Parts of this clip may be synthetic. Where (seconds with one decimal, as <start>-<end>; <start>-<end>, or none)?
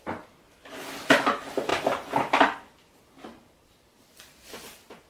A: 1.7-2.9